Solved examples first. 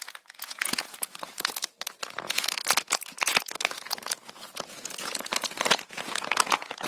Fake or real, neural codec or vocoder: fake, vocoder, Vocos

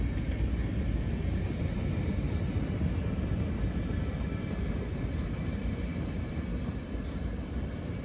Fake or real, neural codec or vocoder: real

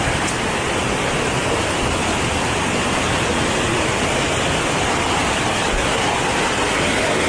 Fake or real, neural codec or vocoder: real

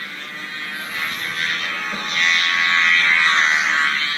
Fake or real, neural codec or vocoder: real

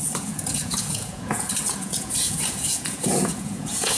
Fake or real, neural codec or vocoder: fake, vocoder, Vocos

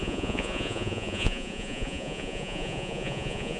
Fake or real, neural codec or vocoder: fake, vocoder, Vocos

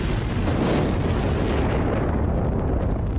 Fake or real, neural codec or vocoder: real